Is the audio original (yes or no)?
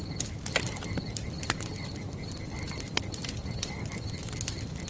yes